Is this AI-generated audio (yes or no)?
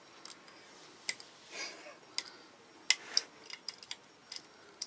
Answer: no